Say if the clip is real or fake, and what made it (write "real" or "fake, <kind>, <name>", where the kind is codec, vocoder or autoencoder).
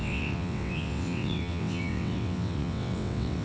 fake, vocoder, WaveNeXt